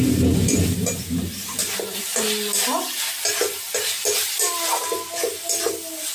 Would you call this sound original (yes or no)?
yes